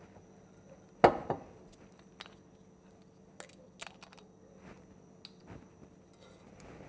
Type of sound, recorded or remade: recorded